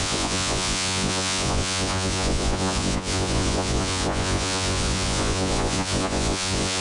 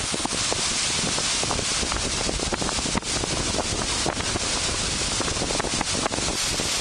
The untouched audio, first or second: second